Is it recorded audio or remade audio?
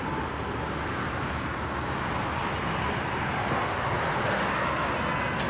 recorded